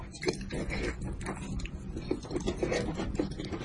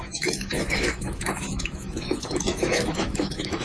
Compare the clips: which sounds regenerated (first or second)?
second